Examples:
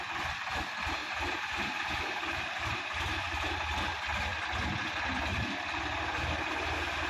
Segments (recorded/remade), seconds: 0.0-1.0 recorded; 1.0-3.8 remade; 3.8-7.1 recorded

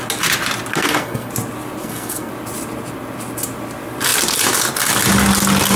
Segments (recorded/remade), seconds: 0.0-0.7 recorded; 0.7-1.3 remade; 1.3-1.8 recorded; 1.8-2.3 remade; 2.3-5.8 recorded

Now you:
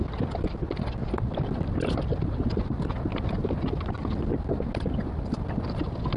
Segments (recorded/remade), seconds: 0.0-6.2 recorded

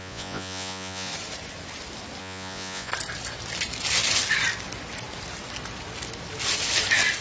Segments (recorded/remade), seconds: 0.0-1.1 remade; 1.1-2.2 recorded; 2.2-2.9 remade; 2.9-7.2 recorded

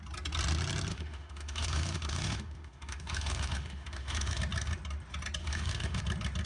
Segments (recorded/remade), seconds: 0.0-0.9 recorded; 0.9-4.4 remade; 4.4-5.4 recorded; 5.4-6.0 remade; 6.0-6.5 recorded

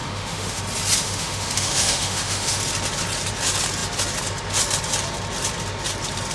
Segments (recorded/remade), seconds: 0.0-0.6 remade; 0.6-1.0 recorded; 1.0-2.6 remade; 2.6-6.3 recorded

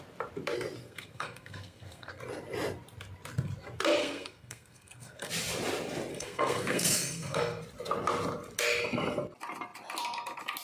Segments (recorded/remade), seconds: 0.0-0.8 recorded; 0.8-2.2 remade; 2.2-4.0 recorded; 4.0-5.3 remade; 5.3-6.1 recorded; 6.1-7.6 remade; 7.6-10.6 recorded